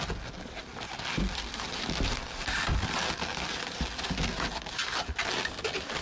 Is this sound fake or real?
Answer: fake